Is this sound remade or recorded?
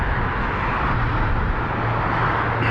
recorded